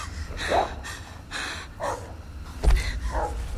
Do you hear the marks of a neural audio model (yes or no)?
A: no